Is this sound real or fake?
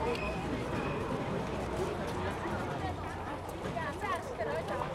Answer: real